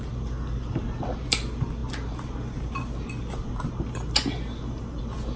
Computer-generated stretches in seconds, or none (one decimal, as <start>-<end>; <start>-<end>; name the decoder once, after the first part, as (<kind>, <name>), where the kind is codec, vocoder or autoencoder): none